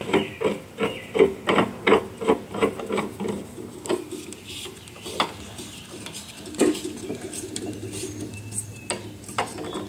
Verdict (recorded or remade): recorded